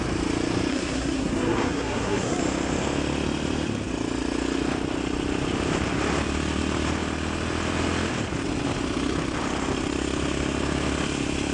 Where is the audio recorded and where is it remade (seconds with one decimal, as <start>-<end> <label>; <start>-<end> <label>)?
0.0-0.7 recorded; 0.7-2.4 remade; 2.4-11.5 recorded